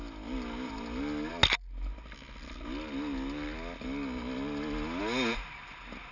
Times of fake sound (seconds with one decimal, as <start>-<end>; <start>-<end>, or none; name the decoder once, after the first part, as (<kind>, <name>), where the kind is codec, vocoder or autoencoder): none